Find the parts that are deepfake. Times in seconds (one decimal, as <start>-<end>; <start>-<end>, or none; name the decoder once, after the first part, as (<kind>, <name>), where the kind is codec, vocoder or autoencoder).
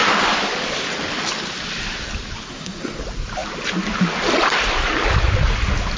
2.5-3.0 (codec, SNAC)